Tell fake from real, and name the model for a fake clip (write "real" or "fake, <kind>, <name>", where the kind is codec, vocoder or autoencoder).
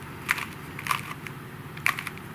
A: real